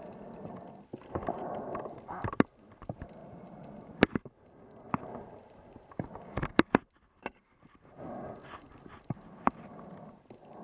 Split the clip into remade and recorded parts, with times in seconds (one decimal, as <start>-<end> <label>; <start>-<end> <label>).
0.0-3.2 recorded; 3.2-5.0 remade; 5.0-10.6 recorded